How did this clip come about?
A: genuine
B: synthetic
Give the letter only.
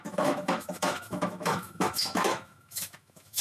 B